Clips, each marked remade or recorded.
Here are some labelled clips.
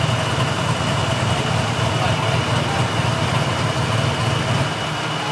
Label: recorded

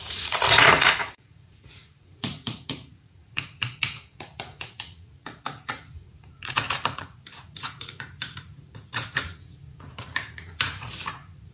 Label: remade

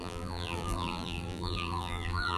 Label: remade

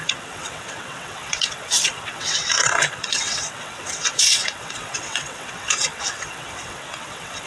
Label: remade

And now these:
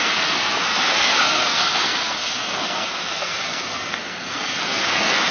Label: remade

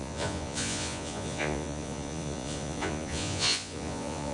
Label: remade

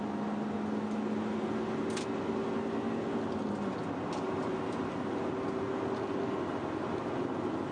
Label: recorded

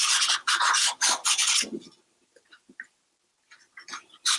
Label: recorded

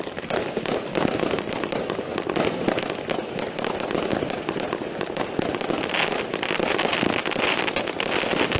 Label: recorded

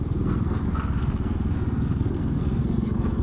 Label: remade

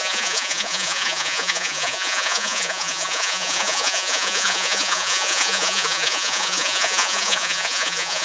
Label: remade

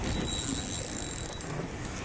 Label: recorded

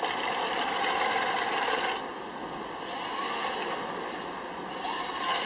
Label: recorded